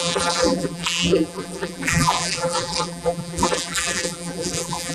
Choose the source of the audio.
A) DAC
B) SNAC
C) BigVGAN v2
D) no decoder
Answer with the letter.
C